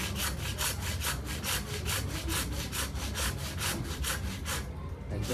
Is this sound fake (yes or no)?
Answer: yes